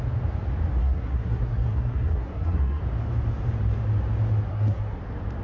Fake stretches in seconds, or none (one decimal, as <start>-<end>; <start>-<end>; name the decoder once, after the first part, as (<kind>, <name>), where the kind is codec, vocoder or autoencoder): 0.8-2.8 (codec, SNAC); 4.5-5.0